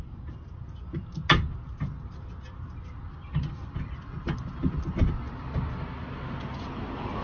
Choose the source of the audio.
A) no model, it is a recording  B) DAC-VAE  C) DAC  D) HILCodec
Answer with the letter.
A